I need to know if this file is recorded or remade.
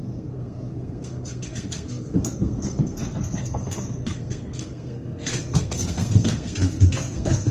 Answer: remade